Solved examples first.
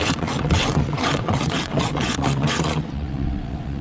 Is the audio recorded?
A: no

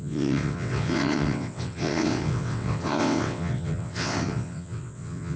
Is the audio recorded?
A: no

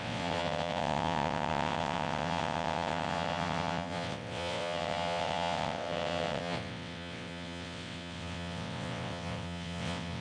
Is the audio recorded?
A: no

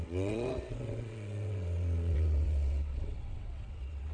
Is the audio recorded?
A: no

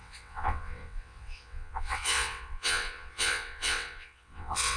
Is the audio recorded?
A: no